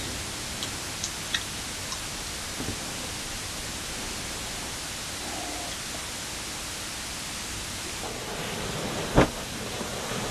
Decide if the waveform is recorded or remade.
recorded